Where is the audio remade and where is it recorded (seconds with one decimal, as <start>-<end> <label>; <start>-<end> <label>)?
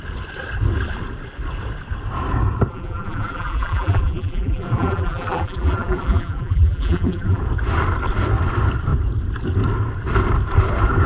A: 0.0-2.7 recorded; 2.7-7.4 remade; 7.4-11.1 recorded